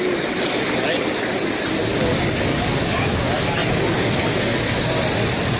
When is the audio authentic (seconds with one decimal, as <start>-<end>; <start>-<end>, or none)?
0.0-1.9; 3.2-5.6